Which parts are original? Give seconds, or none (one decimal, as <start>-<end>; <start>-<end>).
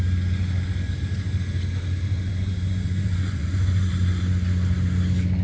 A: 0.0-2.3; 3.9-5.4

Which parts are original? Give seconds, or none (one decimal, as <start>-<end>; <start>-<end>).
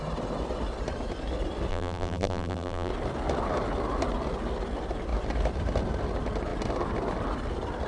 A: 0.0-1.7; 2.9-7.9